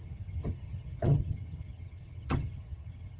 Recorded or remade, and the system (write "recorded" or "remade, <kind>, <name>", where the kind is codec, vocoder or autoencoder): remade, vocoder, HiFi-GAN